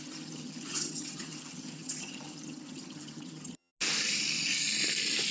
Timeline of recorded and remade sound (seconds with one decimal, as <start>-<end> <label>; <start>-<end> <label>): 0.0-3.7 remade; 3.7-5.3 recorded